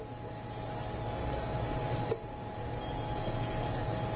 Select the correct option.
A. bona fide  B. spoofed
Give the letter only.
A